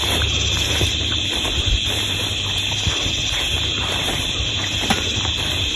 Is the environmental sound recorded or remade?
remade